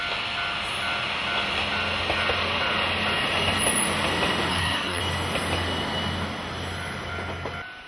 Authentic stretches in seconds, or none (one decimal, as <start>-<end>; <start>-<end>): 0.0-4.5; 5.0-7.9